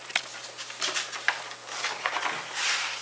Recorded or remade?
recorded